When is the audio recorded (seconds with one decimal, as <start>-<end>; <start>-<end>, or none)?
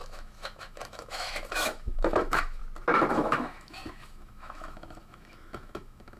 2.6-3.1